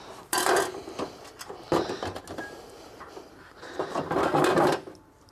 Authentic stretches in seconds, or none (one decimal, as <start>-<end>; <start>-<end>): 0.0-5.3